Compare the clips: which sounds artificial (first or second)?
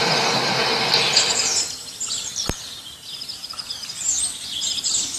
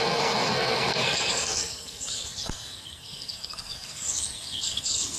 second